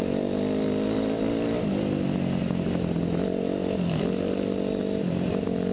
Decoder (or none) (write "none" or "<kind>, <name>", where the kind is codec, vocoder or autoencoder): none